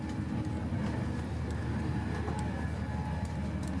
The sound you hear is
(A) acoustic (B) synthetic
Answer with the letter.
A